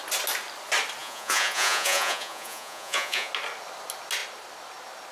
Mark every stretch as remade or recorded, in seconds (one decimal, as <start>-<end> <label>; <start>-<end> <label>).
0.0-1.0 recorded; 1.0-3.3 remade; 3.3-5.1 recorded